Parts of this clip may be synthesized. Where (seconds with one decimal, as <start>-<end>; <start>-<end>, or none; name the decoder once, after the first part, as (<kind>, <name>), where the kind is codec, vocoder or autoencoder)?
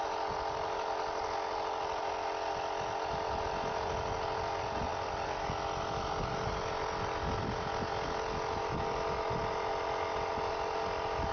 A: none